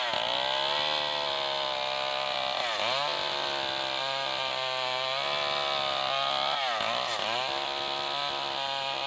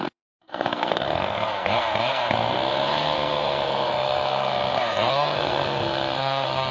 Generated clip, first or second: second